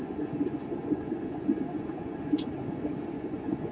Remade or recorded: remade